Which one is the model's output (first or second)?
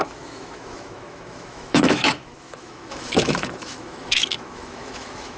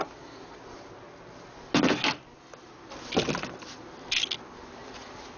first